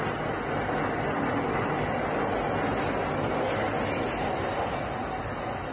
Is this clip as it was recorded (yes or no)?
yes